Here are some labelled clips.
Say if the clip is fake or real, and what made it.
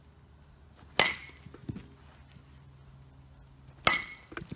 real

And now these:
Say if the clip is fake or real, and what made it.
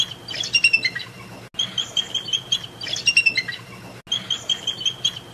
real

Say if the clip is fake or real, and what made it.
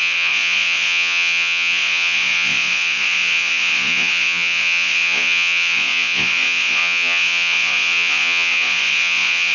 fake, vocoder, Vocos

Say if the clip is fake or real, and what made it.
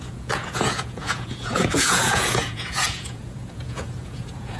fake, vocoder, Vocos